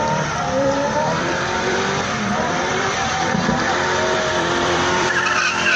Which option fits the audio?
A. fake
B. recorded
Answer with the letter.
A